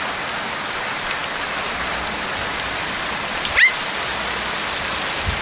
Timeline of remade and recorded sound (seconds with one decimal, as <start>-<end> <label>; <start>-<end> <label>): 0.0-5.4 remade